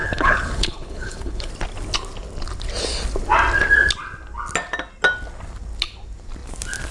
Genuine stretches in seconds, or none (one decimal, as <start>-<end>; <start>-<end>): 1.5-6.9